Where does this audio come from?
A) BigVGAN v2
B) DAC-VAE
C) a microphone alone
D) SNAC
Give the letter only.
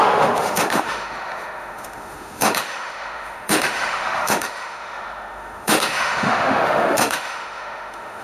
B